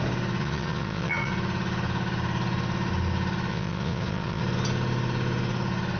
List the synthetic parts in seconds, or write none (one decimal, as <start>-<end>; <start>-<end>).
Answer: 0.4-1.3; 3.5-4.4